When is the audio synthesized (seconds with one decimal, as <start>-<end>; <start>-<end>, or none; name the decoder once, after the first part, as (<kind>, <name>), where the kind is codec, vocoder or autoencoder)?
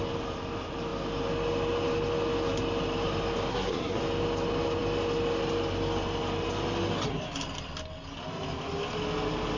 3.5-4.0 (codec, SNAC)